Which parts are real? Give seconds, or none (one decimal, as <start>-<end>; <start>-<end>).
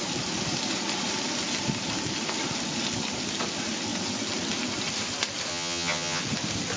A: 0.0-5.5; 6.2-6.8